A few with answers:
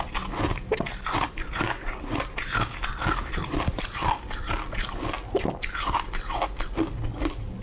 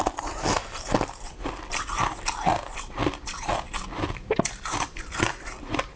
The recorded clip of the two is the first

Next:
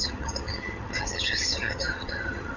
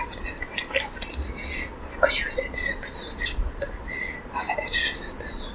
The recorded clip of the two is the second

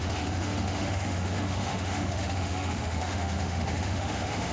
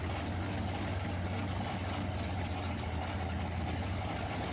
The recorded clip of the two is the second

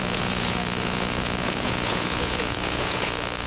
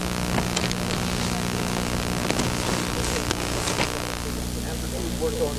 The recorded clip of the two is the second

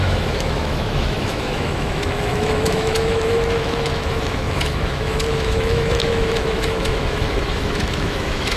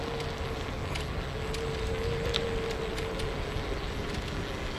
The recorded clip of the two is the second